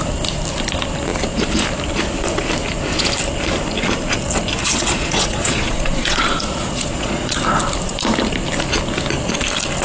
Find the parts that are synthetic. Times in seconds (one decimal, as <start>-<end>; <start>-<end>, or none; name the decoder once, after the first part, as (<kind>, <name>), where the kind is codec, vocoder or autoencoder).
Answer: 4.6-7.4 (vocoder, Vocos)